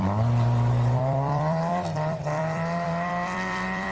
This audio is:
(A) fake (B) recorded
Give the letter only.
A